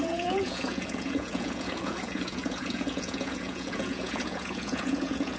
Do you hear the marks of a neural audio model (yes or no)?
yes